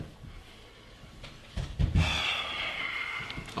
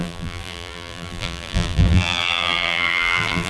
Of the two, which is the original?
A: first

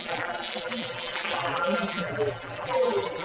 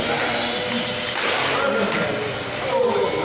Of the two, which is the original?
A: second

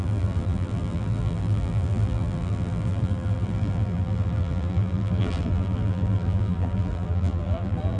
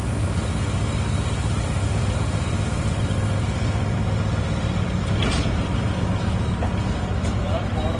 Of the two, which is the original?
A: second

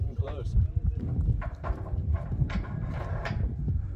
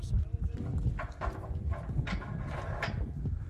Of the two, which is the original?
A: second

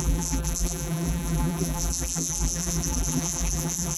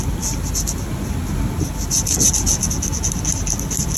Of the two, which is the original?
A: second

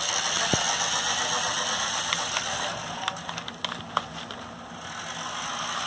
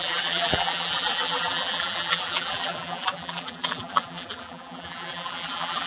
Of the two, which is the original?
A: first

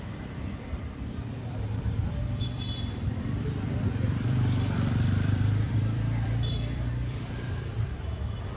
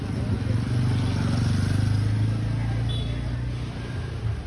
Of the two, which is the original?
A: second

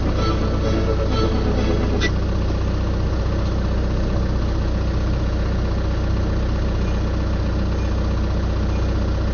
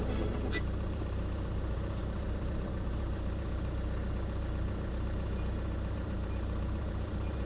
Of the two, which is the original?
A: first